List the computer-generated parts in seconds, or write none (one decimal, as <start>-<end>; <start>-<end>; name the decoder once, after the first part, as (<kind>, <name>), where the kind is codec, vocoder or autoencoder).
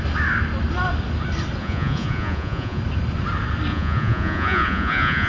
1.6-2.8 (vocoder, Vocos); 3.7-5.3